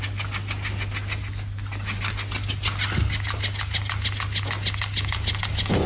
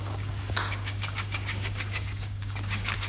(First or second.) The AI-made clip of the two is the second